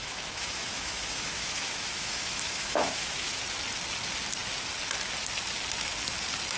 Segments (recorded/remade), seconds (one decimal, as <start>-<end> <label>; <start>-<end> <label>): 0.0-3.4 remade; 3.4-6.6 recorded

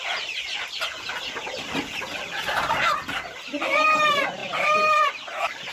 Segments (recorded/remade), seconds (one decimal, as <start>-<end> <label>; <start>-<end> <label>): 0.0-5.7 recorded

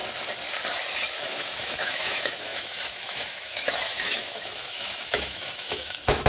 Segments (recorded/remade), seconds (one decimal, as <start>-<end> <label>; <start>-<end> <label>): 0.0-1.2 recorded; 1.2-6.3 remade

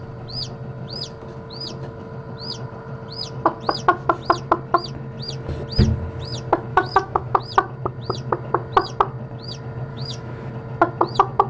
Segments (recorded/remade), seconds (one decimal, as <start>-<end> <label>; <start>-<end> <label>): 0.0-6.7 recorded; 6.7-7.4 remade; 7.4-9.9 recorded; 9.9-10.5 remade; 10.5-11.5 recorded

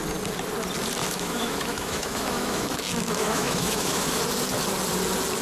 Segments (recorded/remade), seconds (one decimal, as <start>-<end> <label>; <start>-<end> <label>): 0.0-1.0 recorded; 1.0-4.2 remade; 4.2-5.4 recorded

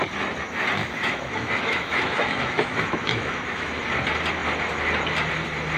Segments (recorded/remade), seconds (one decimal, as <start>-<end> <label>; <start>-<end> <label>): 0.0-0.8 recorded; 0.8-3.8 remade; 3.8-5.8 recorded